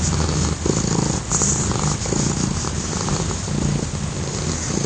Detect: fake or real real